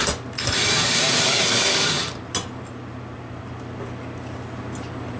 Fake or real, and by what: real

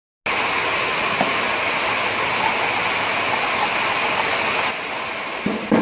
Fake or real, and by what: real